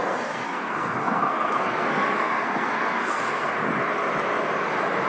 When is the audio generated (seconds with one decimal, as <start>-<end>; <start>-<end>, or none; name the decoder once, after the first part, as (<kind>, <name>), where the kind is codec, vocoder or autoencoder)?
0.0-3.6 (codec, SNAC)